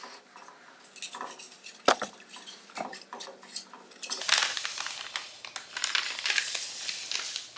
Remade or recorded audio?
recorded